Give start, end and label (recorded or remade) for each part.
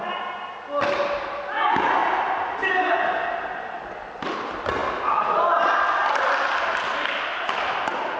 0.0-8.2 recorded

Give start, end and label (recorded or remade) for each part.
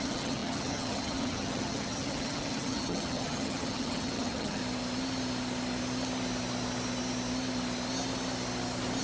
0.0-4.6 remade; 4.6-9.0 recorded